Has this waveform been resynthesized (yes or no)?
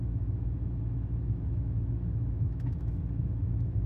yes